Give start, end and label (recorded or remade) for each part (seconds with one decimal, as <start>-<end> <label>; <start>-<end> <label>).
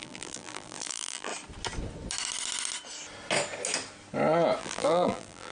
0.0-1.3 remade; 1.3-4.6 recorded; 4.6-5.5 remade